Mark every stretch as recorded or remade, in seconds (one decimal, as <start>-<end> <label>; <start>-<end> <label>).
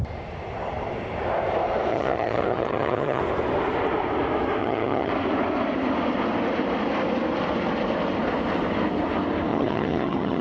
0.0-1.9 recorded; 1.9-3.2 remade; 3.2-4.6 recorded; 4.6-5.1 remade; 5.1-9.5 recorded; 9.5-10.4 remade